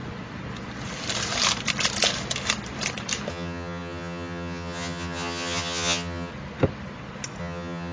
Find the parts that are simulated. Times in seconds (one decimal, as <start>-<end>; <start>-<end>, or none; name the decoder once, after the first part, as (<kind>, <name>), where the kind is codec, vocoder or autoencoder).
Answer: 3.3-6.3 (vocoder, HiFi-GAN); 7.4-7.9